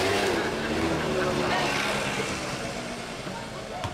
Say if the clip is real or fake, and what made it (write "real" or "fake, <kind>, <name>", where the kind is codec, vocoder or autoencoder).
real